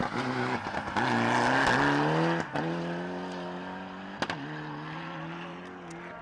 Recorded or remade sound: recorded